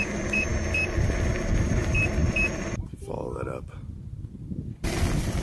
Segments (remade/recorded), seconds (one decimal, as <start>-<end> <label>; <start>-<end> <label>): 0.0-0.5 remade; 0.5-1.3 recorded; 1.3-5.4 remade